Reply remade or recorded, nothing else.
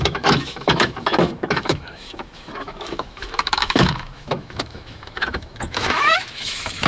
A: remade